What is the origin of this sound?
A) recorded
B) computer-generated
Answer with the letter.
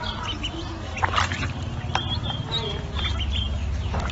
A